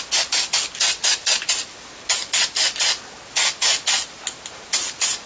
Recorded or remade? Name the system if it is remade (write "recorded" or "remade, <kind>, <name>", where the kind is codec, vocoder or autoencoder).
recorded